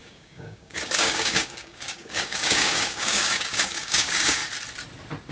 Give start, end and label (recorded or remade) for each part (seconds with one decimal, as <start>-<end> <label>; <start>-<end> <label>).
0.0-4.4 remade; 4.4-5.3 recorded